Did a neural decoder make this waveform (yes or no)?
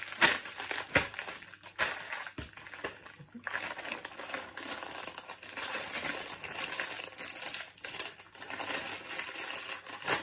no